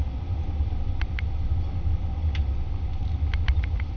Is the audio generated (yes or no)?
no